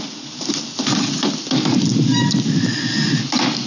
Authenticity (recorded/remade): recorded